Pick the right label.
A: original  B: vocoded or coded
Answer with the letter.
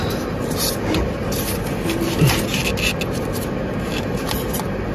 A